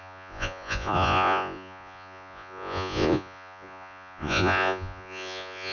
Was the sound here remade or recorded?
remade